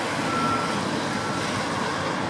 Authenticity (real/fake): real